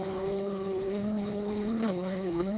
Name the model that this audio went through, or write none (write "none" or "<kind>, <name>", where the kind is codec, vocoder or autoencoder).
codec, HILCodec